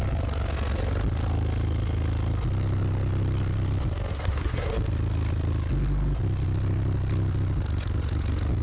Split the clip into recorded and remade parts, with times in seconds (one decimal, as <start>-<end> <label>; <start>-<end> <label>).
0.0-4.1 recorded; 4.1-4.7 remade; 4.7-8.6 recorded